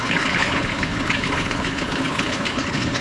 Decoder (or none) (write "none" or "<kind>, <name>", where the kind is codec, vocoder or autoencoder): codec, HILCodec